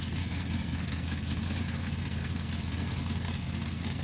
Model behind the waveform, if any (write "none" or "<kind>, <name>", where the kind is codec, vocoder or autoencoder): codec, SNAC